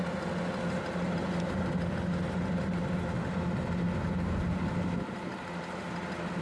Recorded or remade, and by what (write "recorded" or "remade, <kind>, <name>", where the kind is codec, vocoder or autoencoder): recorded